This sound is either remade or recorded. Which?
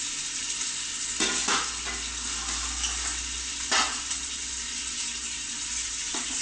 recorded